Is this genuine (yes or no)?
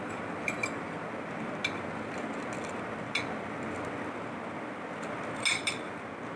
yes